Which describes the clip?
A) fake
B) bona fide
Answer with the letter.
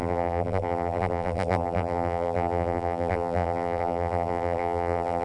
A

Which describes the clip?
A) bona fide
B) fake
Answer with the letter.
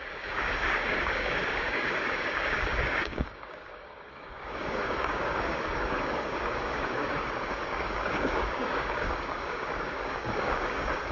B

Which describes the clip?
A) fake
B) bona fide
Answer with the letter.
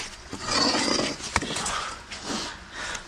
A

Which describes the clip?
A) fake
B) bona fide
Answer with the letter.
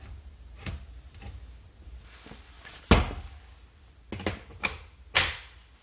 B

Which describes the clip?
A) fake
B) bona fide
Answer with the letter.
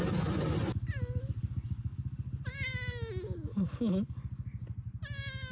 B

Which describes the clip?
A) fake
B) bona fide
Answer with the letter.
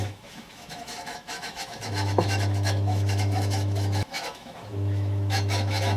A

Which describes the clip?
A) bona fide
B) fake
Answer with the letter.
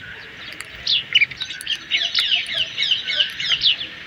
A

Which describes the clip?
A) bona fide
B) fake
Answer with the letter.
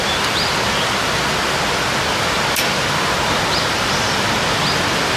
A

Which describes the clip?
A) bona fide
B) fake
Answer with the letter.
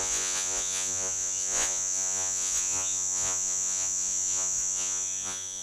B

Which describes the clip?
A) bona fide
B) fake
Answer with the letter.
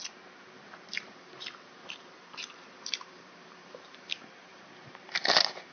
B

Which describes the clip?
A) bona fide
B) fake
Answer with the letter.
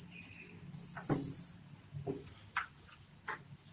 B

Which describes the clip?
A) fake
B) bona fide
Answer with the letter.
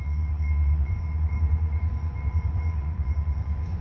A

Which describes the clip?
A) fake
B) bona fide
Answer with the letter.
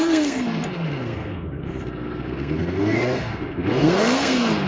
A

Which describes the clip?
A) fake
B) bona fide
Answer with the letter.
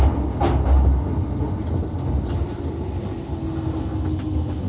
B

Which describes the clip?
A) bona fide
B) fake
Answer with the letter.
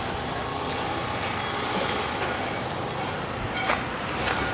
A